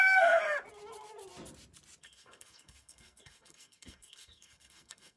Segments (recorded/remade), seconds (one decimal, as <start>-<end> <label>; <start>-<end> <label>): 0.0-0.4 remade; 0.4-2.0 recorded; 2.0-5.2 remade